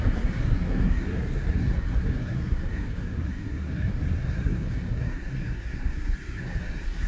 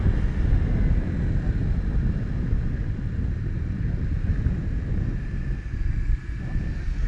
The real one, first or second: second